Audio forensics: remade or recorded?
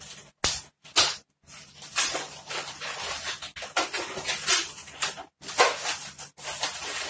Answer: recorded